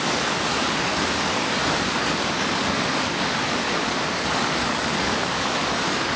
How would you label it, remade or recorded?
remade